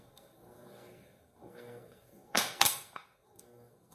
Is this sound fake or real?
fake